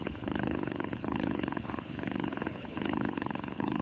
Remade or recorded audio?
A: remade